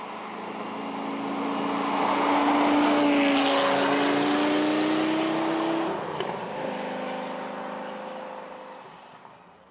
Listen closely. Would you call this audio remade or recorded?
recorded